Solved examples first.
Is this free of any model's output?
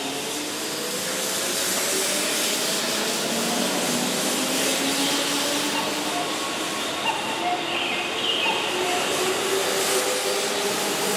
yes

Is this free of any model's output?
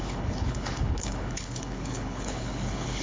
no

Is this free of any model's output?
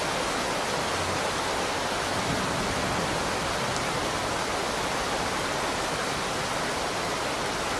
yes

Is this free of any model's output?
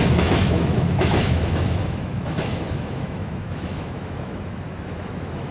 no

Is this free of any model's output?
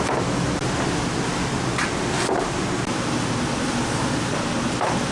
yes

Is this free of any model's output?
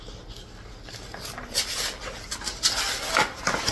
yes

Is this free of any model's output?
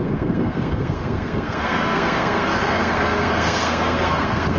no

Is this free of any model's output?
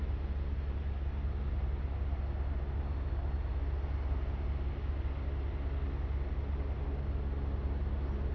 yes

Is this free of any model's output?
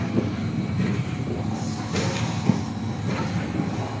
yes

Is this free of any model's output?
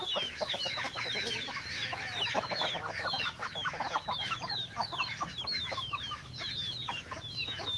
no